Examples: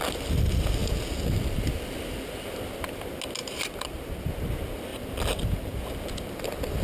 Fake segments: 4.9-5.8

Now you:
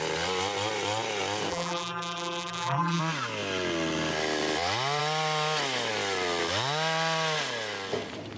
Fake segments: 1.5-3.0

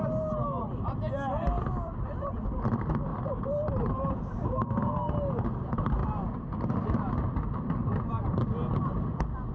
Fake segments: 3.1-4.9; 6.0-6.6

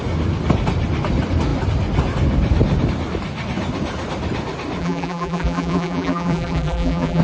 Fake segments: 4.8-7.2

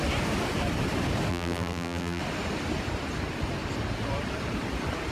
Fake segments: 1.3-2.2

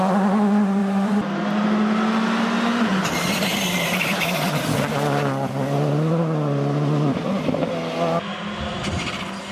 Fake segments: 0.8-1.4; 2.9-4.5

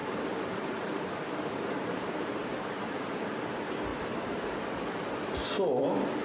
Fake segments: 0.0-3.1; 3.9-4.4

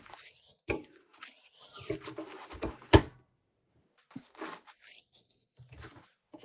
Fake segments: none